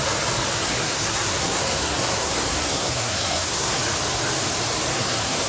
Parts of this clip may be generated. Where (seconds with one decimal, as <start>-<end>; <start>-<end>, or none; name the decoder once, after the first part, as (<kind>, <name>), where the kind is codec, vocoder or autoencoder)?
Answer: 0.5-3.8 (codec, SNAC); 4.9-5.5